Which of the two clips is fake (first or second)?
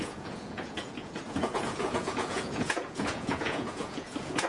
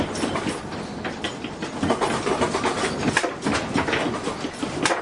first